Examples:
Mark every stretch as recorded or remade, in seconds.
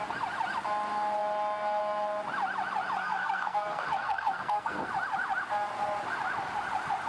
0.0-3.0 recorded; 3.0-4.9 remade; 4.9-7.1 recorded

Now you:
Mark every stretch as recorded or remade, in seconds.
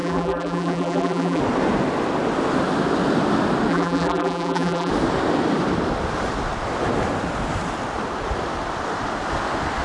0.0-1.4 remade; 1.4-3.7 recorded; 3.7-4.9 remade; 4.9-9.8 recorded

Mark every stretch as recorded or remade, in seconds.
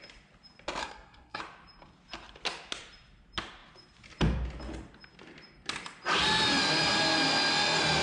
0.0-0.8 recorded; 0.8-1.4 remade; 1.4-8.0 recorded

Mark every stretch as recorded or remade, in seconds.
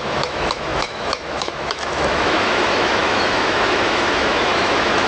0.0-5.1 remade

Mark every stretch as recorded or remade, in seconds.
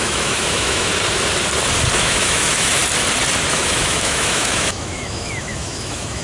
0.0-0.9 remade; 0.9-2.0 recorded; 2.0-2.8 remade; 2.8-3.5 recorded; 3.5-6.2 remade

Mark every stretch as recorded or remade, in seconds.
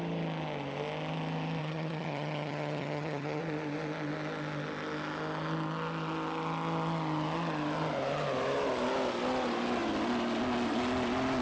0.0-1.6 recorded; 1.6-3.4 remade; 3.4-11.4 recorded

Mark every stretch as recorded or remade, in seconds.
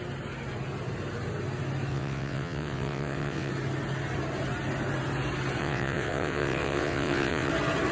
0.0-1.9 recorded; 1.9-3.5 remade; 3.5-5.6 recorded; 5.6-7.5 remade; 7.5-7.9 recorded